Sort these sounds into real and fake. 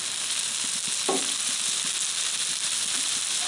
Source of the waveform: real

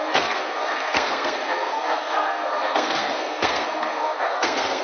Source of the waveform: fake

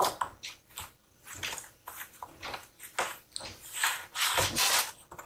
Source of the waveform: real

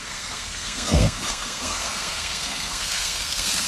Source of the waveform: fake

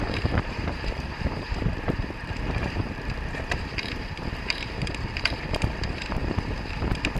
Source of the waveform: fake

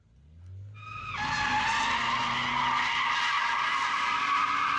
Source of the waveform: real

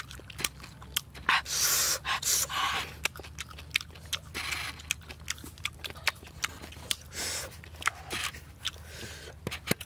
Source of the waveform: real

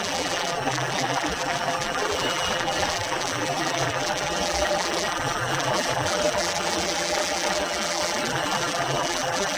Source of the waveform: fake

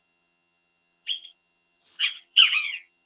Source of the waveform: fake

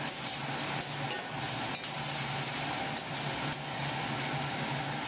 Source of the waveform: real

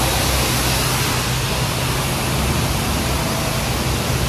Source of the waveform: real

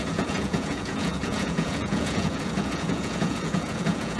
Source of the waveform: fake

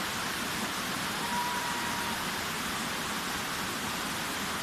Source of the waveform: real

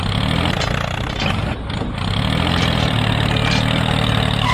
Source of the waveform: real